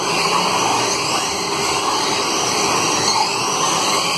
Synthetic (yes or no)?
no